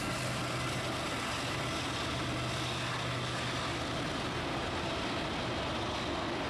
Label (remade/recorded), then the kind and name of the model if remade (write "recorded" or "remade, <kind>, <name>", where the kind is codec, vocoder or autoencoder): recorded